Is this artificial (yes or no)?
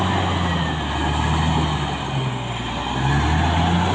no